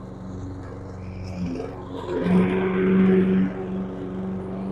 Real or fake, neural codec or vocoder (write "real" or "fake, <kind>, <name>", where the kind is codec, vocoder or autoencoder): real